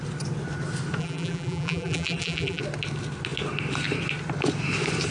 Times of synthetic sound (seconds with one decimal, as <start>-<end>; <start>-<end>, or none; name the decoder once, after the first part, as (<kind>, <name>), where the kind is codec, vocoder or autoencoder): 1.0-2.6 (vocoder, BigVGAN v2)